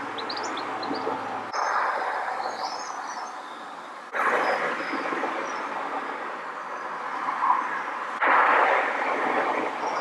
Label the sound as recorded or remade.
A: recorded